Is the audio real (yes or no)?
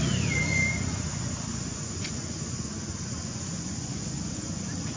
no